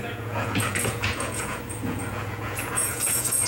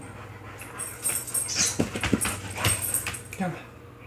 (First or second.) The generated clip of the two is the first